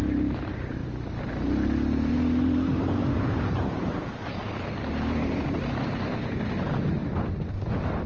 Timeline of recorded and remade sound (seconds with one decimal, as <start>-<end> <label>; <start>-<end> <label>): 0.0-0.8 remade; 0.8-3.5 recorded; 3.5-4.4 remade; 4.4-6.5 recorded; 6.5-7.0 remade; 7.0-8.1 recorded